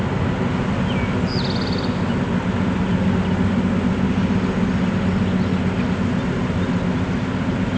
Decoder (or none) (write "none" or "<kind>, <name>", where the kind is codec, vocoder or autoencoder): none